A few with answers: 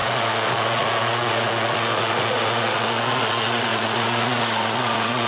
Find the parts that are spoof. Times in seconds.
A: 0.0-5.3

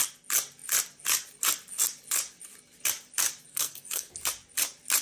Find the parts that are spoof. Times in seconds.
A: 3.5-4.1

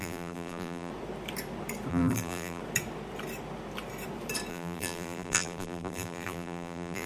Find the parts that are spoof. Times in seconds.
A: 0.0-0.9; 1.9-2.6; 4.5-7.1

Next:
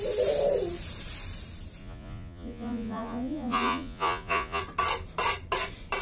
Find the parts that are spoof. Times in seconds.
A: 1.8-4.6